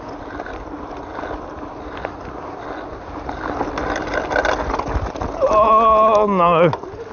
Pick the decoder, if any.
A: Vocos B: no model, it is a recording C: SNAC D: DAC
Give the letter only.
B